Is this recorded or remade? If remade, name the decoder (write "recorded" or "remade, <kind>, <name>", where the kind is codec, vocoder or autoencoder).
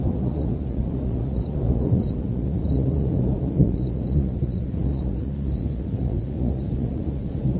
remade, vocoder, Vocos